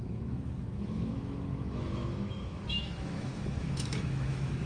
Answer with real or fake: fake